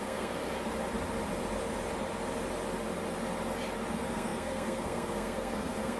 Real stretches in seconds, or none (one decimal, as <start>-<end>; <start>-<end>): 0.4-3.9